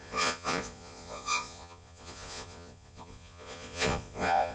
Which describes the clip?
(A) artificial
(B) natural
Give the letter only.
A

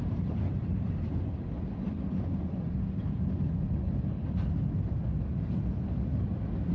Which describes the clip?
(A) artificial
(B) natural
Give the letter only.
B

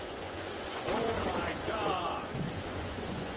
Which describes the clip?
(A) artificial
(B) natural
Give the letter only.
A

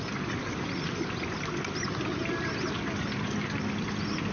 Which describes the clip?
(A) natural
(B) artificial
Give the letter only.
A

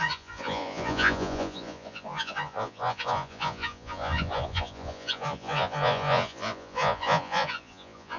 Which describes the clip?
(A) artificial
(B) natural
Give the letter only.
A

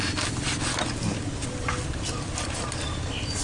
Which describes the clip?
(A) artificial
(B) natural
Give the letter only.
B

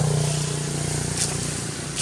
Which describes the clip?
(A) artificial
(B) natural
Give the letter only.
B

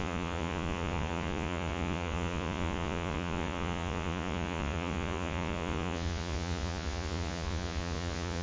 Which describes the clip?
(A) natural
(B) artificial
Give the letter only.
B